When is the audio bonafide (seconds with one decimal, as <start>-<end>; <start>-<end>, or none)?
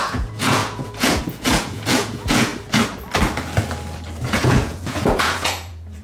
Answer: 2.5-4.3